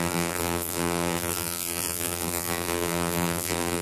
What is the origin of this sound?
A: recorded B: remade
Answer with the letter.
B